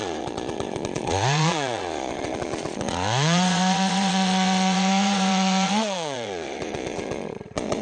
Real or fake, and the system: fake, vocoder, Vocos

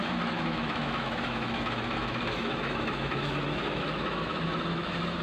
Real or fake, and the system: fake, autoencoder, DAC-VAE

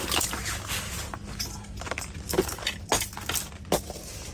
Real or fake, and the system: real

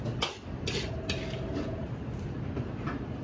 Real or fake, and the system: real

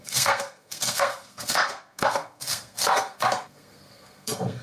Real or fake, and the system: fake, codec, SNAC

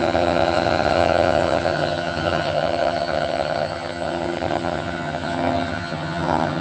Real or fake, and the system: fake, vocoder, HiFi-GAN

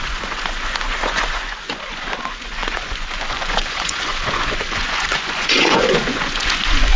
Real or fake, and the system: fake, vocoder, Vocos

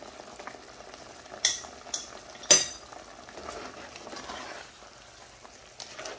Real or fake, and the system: real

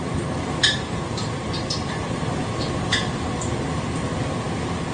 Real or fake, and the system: fake, vocoder, BigVGAN v2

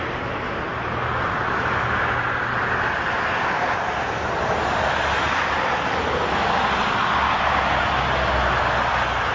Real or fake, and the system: real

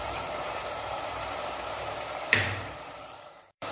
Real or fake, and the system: fake, vocoder, BigVGAN v2